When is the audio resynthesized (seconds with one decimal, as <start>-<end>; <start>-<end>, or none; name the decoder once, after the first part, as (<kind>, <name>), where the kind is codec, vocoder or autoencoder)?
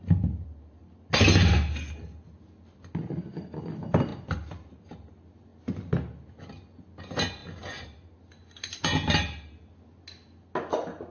none